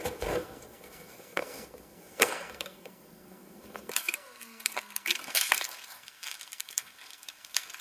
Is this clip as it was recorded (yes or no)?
no